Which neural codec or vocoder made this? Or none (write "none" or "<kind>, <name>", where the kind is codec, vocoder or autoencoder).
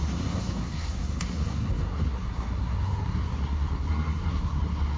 codec, SNAC